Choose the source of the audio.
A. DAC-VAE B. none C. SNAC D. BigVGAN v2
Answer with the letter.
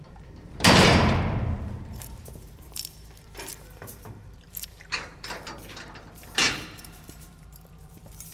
D